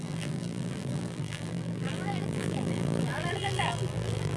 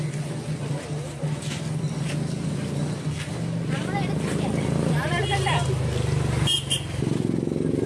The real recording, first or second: second